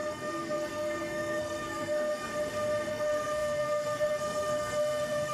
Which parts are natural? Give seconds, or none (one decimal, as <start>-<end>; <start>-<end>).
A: 2.3-2.9